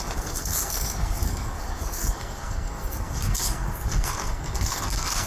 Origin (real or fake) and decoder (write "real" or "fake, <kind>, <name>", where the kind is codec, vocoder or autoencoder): fake, codec, SNAC